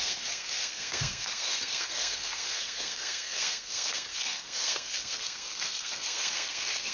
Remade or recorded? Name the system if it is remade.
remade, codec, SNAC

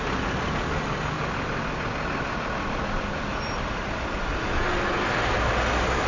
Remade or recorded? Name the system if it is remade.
recorded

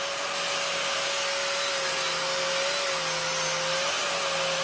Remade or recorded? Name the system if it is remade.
recorded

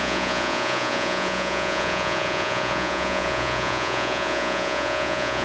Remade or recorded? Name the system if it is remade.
remade, vocoder, Vocos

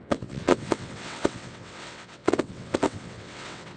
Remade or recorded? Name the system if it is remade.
remade, vocoder, WaveNeXt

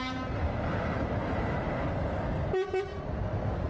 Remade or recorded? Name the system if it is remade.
recorded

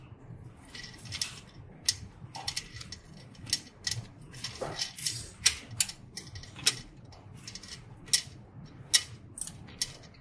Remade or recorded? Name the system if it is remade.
recorded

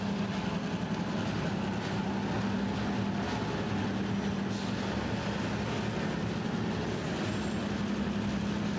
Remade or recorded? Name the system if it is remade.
recorded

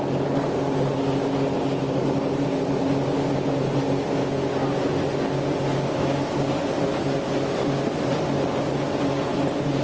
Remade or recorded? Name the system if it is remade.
recorded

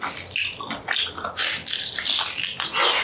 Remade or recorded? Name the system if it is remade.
recorded